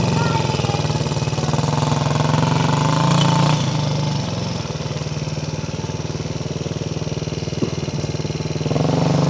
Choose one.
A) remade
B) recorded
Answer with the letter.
B